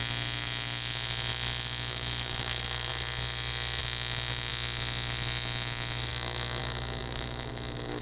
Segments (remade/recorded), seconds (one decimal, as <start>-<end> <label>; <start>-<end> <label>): 0.0-3.8 remade; 3.8-4.5 recorded; 4.5-8.0 remade